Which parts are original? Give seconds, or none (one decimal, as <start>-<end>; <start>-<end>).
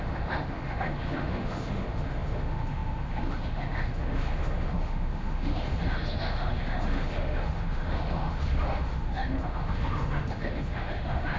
none